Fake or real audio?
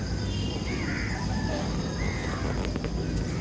real